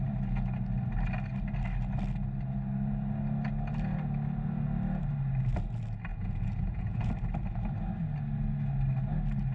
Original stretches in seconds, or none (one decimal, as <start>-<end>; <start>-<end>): 0.0-6.1; 7.1-9.5